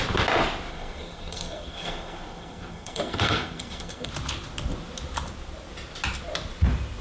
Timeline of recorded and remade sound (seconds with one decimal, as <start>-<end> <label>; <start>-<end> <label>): 0.0-0.7 recorded; 0.7-4.1 remade; 4.1-7.0 recorded